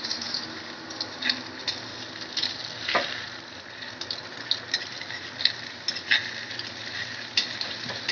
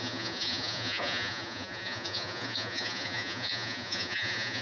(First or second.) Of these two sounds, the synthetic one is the second